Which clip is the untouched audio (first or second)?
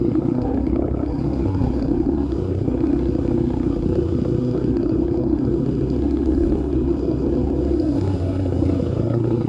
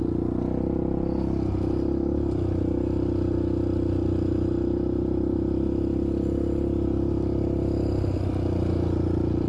second